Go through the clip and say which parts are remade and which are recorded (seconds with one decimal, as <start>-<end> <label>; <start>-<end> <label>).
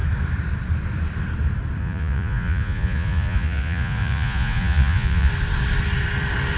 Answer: 0.0-1.8 recorded; 1.8-5.3 remade; 5.3-6.6 recorded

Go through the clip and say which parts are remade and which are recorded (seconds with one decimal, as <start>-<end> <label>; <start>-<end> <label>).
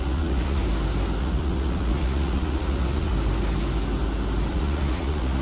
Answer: 0.0-0.6 remade; 0.6-1.2 recorded; 1.2-3.1 remade; 3.1-4.5 recorded; 4.5-5.4 remade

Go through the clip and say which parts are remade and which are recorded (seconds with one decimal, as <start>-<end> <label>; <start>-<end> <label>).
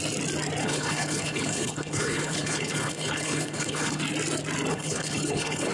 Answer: 0.0-0.6 recorded; 0.6-4.0 remade; 4.0-4.7 recorded; 4.7-5.7 remade